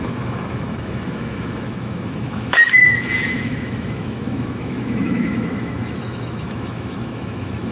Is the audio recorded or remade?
remade